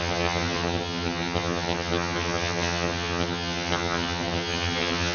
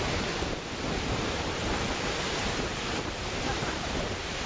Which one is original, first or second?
second